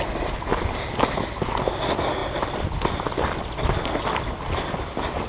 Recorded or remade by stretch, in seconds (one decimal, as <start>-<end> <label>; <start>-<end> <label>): 0.0-5.3 recorded